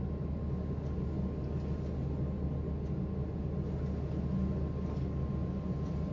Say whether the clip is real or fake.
real